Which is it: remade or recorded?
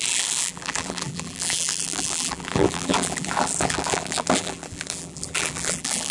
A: remade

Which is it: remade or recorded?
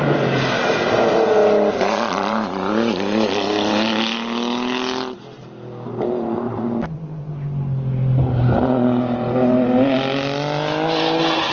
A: recorded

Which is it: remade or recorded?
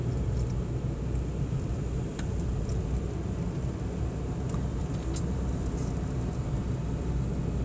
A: recorded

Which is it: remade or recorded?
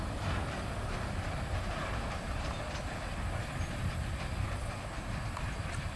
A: recorded